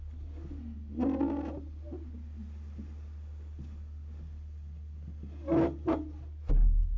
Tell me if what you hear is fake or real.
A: real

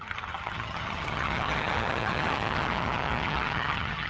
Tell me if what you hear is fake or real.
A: fake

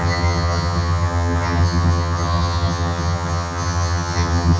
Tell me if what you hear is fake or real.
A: fake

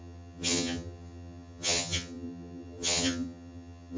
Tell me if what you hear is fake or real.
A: fake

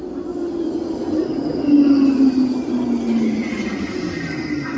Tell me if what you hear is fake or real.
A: real